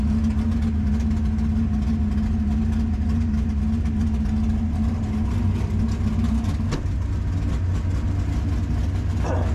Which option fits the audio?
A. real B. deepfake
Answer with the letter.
A